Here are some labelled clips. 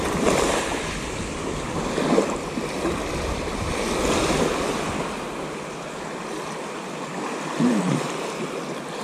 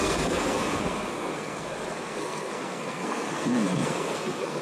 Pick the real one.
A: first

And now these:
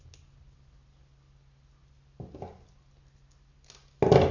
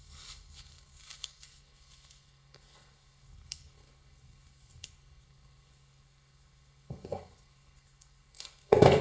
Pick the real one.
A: first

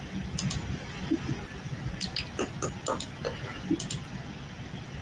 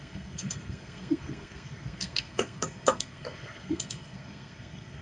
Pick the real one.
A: first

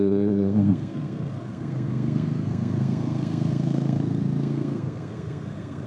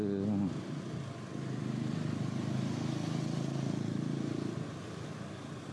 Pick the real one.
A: second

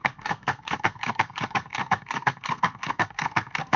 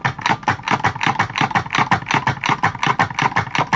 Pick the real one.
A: second